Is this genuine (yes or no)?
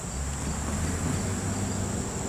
yes